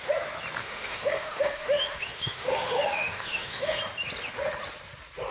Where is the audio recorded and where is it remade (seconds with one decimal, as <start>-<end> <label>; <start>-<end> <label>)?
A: 0.0-0.6 recorded; 0.6-3.8 remade; 3.8-5.3 recorded